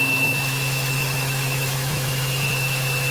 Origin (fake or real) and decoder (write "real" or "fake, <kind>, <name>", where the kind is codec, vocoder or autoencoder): fake, autoencoder, DAC-VAE